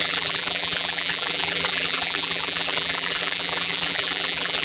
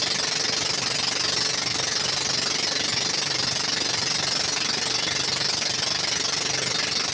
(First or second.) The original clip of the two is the second